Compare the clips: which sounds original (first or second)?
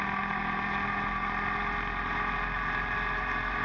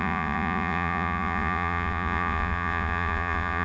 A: first